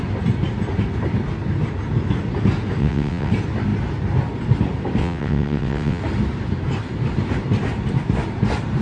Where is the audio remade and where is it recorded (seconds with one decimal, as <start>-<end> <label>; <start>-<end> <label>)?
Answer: 0.0-2.8 recorded; 2.8-3.3 remade; 3.3-5.0 recorded; 5.0-6.0 remade; 6.0-8.8 recorded